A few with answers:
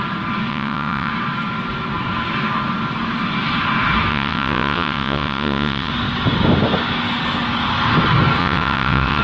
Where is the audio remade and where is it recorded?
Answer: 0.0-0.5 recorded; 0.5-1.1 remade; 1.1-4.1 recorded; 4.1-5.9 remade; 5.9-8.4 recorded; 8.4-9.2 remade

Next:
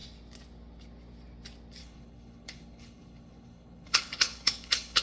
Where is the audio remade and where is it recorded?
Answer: 0.0-1.8 recorded; 1.8-5.0 remade

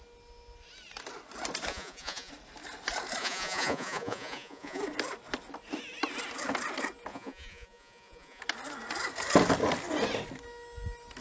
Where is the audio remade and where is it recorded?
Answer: 0.0-1.7 recorded; 1.7-2.3 remade; 2.3-3.2 recorded; 3.2-4.8 remade; 4.8-7.1 recorded; 7.1-8.4 remade; 8.4-11.2 recorded

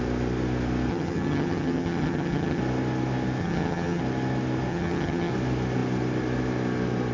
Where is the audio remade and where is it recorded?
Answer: 0.0-0.9 recorded; 0.9-2.6 remade; 2.6-3.4 recorded; 3.4-4.0 remade; 4.0-4.7 recorded; 4.7-5.3 remade; 5.3-7.1 recorded

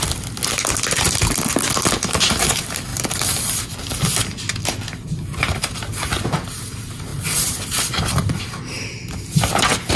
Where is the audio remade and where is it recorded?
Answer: 0.0-2.9 recorded; 2.9-3.6 remade; 3.6-7.1 recorded; 7.1-8.4 remade; 8.4-10.0 recorded

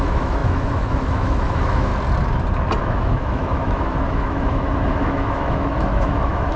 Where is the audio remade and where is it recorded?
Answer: 0.0-1.9 remade; 1.9-2.8 recorded; 2.8-6.6 remade

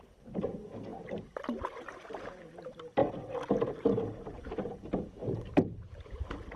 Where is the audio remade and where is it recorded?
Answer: 0.0-3.0 remade; 3.0-3.6 recorded; 3.6-6.6 remade

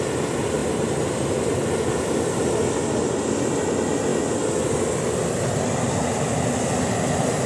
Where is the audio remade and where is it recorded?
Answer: 0.0-7.5 recorded